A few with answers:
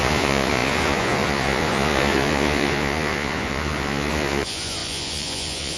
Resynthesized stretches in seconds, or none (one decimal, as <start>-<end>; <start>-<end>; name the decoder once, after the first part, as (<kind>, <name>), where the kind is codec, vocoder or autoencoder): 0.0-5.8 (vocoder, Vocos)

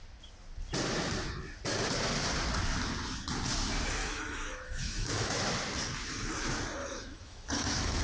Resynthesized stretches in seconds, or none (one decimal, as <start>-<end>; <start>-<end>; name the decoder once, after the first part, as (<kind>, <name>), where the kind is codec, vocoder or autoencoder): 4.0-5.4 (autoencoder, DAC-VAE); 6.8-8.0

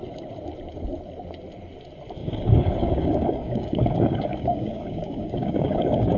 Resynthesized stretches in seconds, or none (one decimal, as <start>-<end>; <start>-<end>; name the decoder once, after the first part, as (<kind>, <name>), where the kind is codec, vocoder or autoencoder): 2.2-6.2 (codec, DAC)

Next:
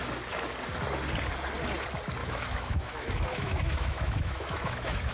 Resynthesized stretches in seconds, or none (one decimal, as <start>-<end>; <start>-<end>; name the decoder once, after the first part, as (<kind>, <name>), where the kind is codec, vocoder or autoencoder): 2.2-5.1 (autoencoder, DAC-VAE)